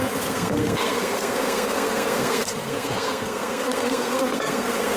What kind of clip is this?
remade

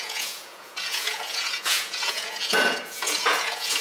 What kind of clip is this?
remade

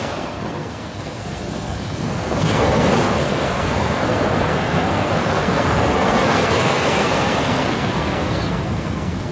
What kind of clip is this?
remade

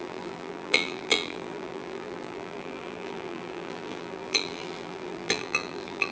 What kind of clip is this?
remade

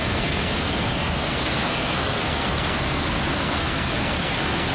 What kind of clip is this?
remade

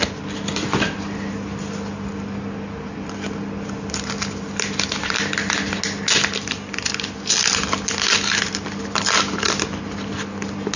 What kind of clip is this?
recorded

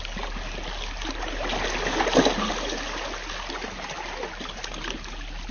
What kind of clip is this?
recorded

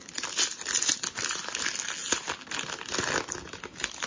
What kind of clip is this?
recorded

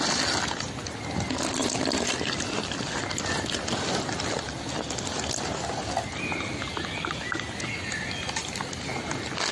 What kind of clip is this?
recorded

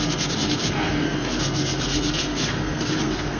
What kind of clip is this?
remade